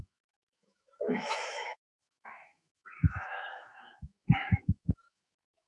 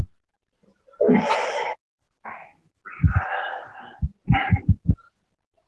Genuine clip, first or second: second